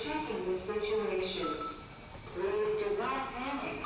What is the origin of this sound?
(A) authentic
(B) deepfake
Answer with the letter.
A